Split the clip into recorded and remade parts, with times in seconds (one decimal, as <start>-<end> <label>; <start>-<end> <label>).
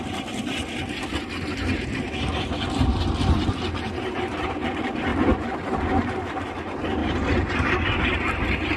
0.0-7.0 recorded; 7.0-7.7 remade; 7.7-8.8 recorded